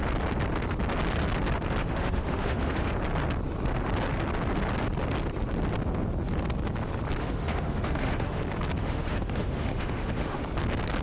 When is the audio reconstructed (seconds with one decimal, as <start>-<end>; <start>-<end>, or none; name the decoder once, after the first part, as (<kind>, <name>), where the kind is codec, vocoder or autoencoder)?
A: 1.8-2.9 (autoencoder, DAC-VAE); 7.2-8.4; 8.8-10.4